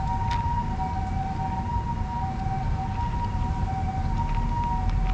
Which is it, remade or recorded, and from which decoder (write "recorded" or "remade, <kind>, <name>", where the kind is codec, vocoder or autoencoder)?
recorded